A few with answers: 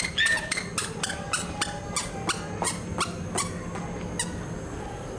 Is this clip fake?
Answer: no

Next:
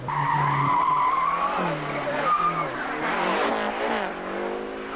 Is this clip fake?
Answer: no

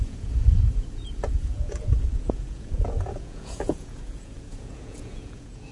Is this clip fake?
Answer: yes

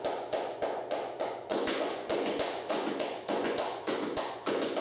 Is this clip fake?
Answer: yes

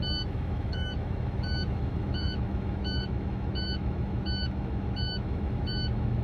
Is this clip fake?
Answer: yes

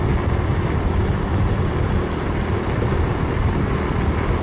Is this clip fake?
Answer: no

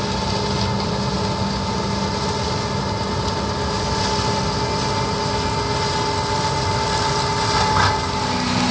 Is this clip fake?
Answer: no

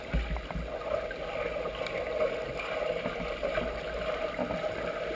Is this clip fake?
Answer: no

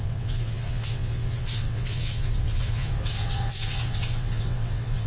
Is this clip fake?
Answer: yes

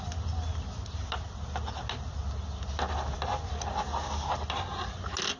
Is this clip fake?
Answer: no